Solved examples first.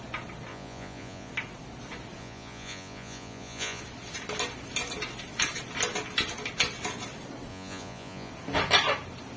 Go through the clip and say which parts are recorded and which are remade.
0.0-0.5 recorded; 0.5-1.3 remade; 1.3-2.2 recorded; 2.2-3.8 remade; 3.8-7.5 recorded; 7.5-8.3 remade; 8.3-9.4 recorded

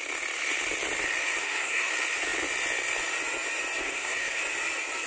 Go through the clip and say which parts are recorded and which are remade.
0.0-1.4 recorded; 1.4-1.9 remade; 1.9-3.8 recorded; 3.8-4.4 remade; 4.4-5.1 recorded

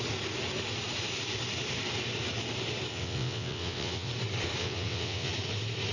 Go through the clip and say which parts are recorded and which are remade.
0.0-2.9 recorded; 2.9-4.1 remade; 4.1-4.6 recorded; 4.6-5.3 remade; 5.3-5.9 recorded

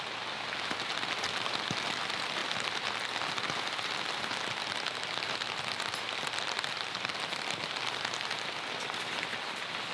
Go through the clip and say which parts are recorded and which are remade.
0.0-9.9 recorded

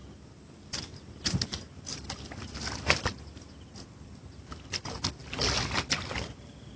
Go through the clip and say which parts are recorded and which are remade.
0.0-6.8 recorded

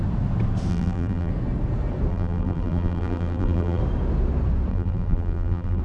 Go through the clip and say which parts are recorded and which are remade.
0.0-0.7 recorded; 0.7-1.3 remade; 1.3-2.1 recorded; 2.1-3.8 remade; 3.8-4.7 recorded; 4.7-5.8 remade

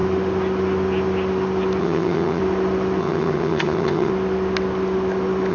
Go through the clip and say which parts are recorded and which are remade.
0.0-1.8 recorded; 1.8-2.4 remade; 2.4-3.0 recorded; 3.0-4.1 remade; 4.1-5.5 recorded

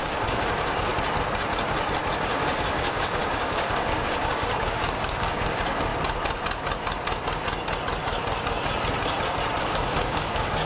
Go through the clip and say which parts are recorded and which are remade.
0.0-0.9 remade; 0.9-2.2 recorded; 2.2-5.9 remade; 5.9-9.6 recorded; 9.6-10.7 remade